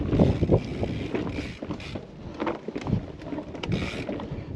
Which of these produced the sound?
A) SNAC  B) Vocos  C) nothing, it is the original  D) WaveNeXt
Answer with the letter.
C